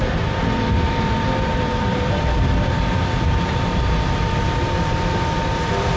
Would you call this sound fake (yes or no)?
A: yes